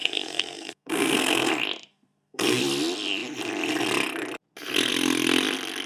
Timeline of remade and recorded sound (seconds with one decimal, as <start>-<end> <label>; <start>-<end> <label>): 0.0-1.5 remade; 1.5-1.9 recorded; 1.9-2.6 remade; 2.6-5.9 recorded